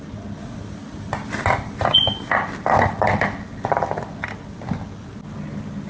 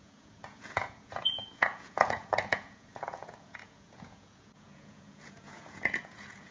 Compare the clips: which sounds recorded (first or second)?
first